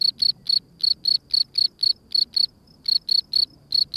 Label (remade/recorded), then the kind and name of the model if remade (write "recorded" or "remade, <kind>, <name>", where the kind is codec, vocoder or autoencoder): recorded